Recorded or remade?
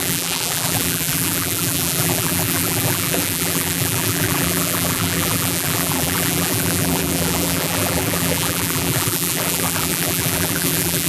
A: remade